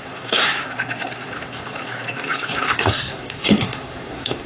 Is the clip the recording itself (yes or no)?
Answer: no